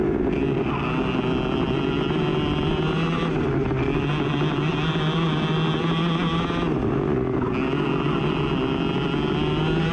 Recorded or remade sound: recorded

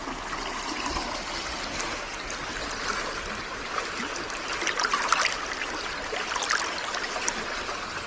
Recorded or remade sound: recorded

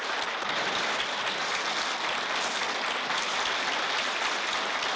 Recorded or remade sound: recorded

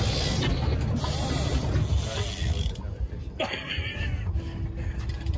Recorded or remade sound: recorded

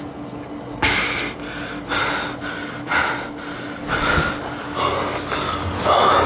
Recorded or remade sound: recorded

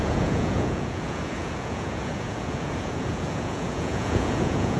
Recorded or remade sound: remade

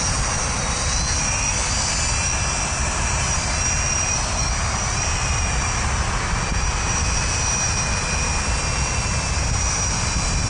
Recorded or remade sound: recorded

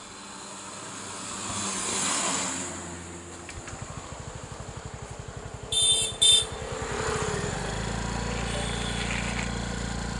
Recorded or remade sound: recorded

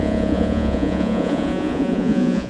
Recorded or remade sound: remade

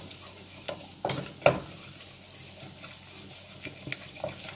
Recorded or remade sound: recorded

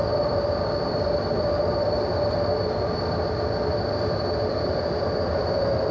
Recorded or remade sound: recorded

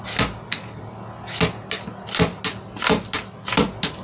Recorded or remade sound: recorded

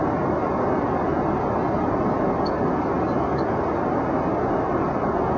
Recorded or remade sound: recorded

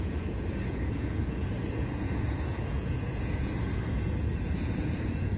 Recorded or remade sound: remade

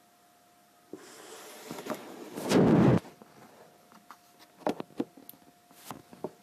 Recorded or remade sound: recorded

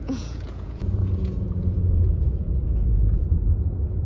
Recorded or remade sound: remade